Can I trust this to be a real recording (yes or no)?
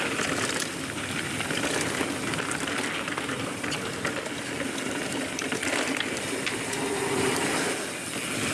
yes